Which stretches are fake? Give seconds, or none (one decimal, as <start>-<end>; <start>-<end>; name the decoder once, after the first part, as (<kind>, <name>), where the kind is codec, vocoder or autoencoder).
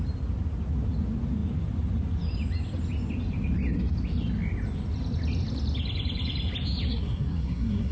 6.9-7.9 (codec, SNAC)